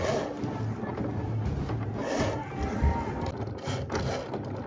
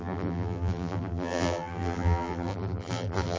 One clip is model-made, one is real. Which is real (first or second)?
first